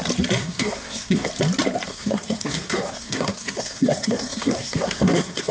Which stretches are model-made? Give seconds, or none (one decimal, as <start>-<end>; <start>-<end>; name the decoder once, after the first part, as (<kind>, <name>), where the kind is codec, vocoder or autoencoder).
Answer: 0.4-1.3 (codec, SNAC); 1.9-5.5